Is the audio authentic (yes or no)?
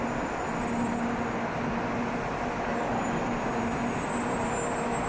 yes